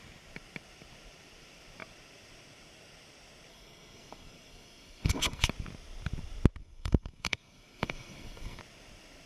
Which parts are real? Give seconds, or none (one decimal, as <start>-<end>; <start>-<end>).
0.0-3.5; 5.4-6.6; 8.6-9.3